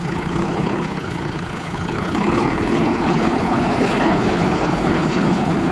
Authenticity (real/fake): fake